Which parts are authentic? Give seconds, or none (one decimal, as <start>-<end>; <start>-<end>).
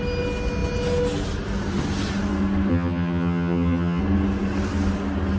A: 0.0-2.7; 4.0-5.4